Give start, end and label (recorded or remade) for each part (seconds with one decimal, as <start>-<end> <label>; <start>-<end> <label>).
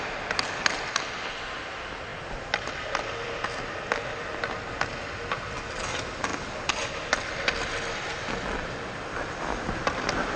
0.0-10.4 recorded